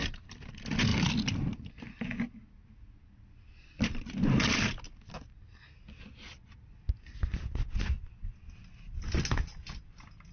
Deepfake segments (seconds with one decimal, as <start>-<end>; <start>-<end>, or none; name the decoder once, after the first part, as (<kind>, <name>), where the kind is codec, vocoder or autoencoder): 0.0-0.5 (vocoder, BigVGAN v2)